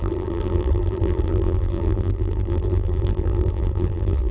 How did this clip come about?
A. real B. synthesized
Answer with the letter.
B